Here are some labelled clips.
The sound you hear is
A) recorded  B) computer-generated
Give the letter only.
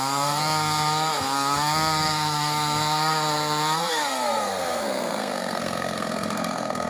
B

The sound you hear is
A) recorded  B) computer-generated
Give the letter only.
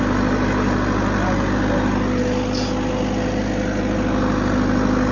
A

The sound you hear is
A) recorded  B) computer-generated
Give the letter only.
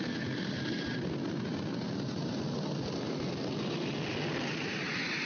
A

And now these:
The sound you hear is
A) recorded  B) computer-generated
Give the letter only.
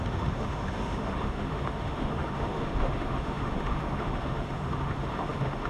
B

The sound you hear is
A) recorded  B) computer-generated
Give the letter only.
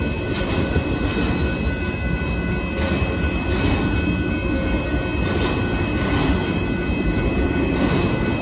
A